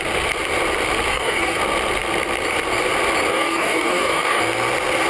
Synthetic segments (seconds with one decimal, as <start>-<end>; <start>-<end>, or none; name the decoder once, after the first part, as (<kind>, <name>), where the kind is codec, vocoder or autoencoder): 1.1-1.6 (codec, DAC); 3.3-4.4

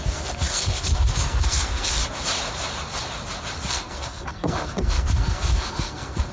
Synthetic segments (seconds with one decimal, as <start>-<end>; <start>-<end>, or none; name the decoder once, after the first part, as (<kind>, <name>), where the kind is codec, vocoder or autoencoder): 0.0-2.0 (codec, SNAC); 3.7-6.3